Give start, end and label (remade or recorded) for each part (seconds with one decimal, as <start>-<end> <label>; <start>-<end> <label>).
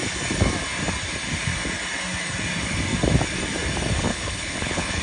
0.0-4.1 recorded; 4.1-5.0 remade